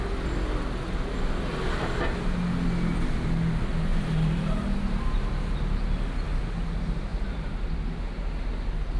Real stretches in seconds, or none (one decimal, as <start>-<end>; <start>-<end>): 0.0-3.9; 5.3-7.1; 7.9-9.0